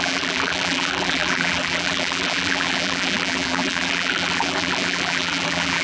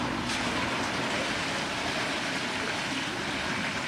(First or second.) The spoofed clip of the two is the first